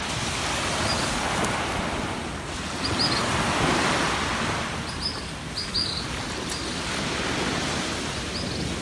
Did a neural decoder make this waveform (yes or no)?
no